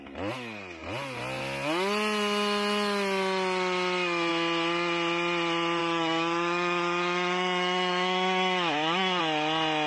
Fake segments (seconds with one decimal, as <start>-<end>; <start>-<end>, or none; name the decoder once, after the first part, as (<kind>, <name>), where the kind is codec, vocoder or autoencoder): 5.8-9.2 (autoencoder, DAC-VAE)